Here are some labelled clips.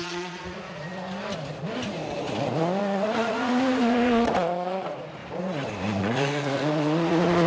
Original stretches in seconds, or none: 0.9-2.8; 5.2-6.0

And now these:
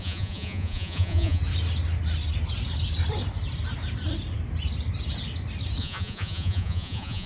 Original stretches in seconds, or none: 1.4-5.8

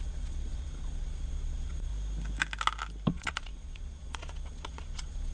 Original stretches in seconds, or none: 1.9-3.1

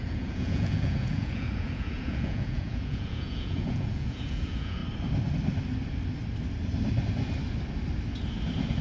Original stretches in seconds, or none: 4.8-8.8

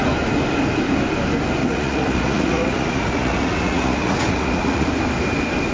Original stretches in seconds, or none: 0.0-1.6; 4.9-5.7